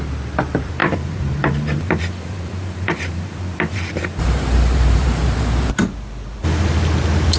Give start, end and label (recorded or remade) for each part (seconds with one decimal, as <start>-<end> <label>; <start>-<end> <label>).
0.0-0.8 recorded; 0.8-5.2 remade; 5.2-7.4 recorded